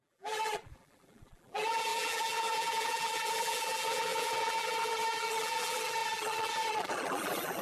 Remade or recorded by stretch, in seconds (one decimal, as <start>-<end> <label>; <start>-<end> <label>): 0.0-7.6 remade